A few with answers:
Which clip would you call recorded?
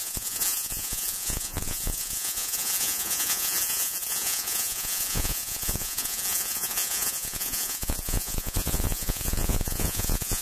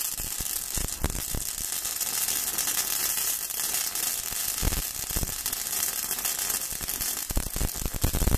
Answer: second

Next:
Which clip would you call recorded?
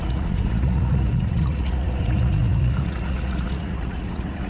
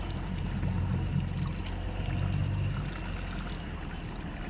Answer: second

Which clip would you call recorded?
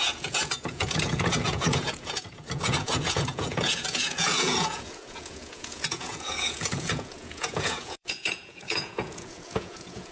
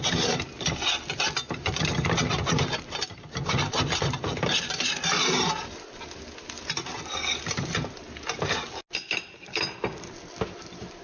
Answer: second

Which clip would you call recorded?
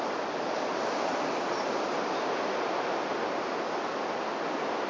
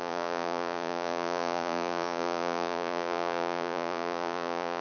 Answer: first